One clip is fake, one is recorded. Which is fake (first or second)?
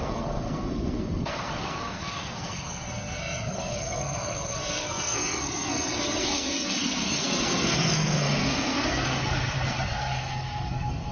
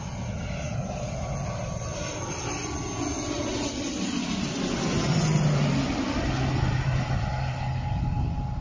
first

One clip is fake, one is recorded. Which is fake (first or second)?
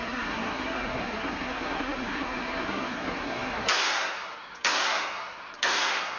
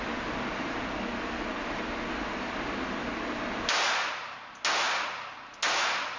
first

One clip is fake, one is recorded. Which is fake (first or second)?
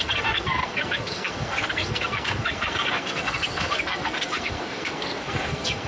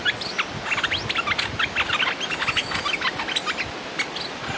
first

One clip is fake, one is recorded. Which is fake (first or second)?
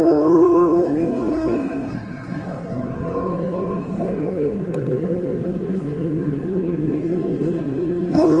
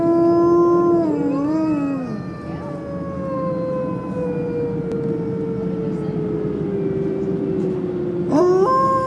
first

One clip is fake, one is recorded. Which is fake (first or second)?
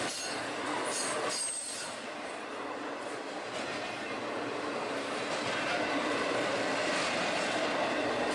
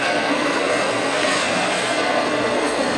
second